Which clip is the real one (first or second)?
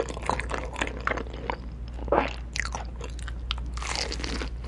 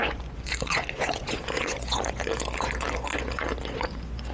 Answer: first